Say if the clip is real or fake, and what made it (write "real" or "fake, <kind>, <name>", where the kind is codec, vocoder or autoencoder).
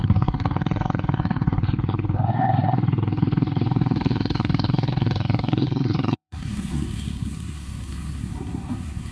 fake, codec, SNAC